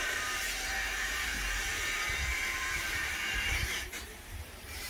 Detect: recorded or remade remade